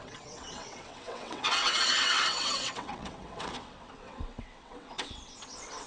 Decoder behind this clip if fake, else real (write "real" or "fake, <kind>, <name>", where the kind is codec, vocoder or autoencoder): fake, vocoder, WaveNeXt